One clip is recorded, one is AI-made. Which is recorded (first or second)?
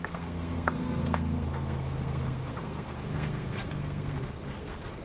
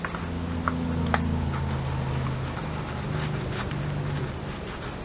second